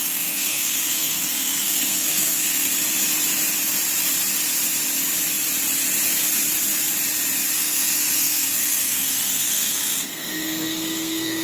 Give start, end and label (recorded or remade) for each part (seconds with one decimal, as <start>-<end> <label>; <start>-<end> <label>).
0.0-2.7 remade; 2.7-7.6 recorded; 7.6-11.4 remade